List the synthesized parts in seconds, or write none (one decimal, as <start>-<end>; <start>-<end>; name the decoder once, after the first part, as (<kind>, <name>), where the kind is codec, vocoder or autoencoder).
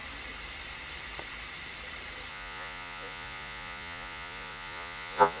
2.3-5.4 (vocoder, Vocos)